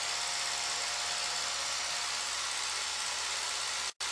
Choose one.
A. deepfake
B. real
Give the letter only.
B